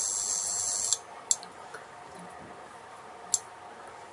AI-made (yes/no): no